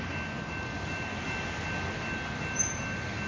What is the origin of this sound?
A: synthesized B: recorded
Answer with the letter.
B